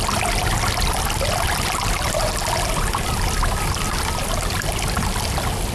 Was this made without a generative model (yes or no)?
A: yes